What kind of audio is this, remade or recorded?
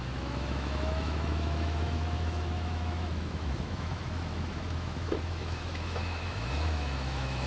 remade